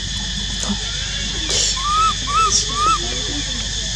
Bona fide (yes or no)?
yes